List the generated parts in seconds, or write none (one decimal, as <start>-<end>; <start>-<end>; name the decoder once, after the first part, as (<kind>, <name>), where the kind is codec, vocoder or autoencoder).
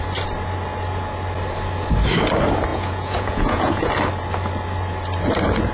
2.7-3.9 (vocoder, Vocos)